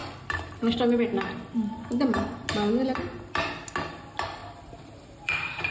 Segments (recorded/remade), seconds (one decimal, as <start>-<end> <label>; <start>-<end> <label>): 0.0-4.4 recorded; 4.4-5.7 remade